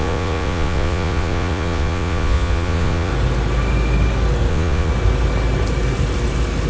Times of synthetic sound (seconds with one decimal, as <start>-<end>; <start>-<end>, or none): 0.0-3.1; 4.5-4.9

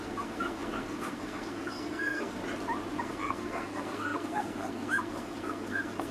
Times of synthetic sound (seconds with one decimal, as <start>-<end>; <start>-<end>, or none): 0.0-2.4; 3.0-6.1

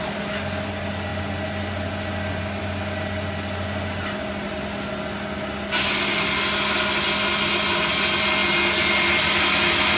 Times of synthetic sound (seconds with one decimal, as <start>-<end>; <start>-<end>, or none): none

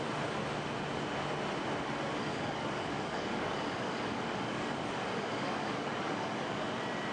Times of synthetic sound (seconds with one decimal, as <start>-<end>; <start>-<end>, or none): 2.3-6.6

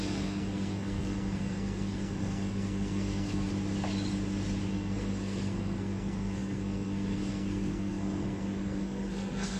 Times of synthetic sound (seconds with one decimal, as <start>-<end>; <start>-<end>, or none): 0.0-3.5; 4.7-9.6

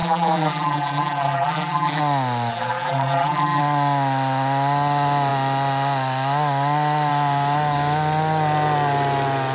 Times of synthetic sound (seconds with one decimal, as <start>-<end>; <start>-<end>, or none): 0.0-2.0; 2.5-3.6